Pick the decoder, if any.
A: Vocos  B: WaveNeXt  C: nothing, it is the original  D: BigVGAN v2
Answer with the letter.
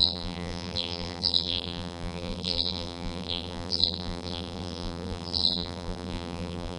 D